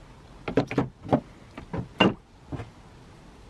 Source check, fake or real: real